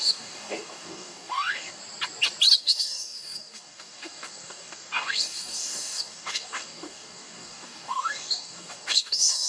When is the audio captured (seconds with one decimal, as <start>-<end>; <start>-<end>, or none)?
1.8-2.6